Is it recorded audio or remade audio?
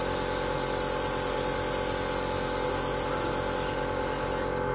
recorded